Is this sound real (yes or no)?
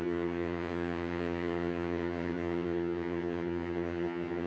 no